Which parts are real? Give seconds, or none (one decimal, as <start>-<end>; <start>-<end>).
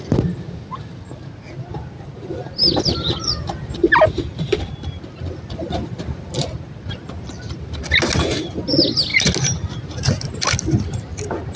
0.0-11.6